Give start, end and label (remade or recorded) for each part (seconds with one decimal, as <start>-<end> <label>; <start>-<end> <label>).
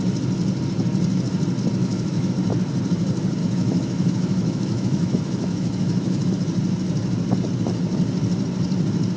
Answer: 0.0-1.8 recorded; 1.8-2.3 remade; 2.3-3.4 recorded; 3.4-6.3 remade; 6.3-9.2 recorded